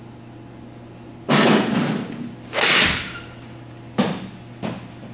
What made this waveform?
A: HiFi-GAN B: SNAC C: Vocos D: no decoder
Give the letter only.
D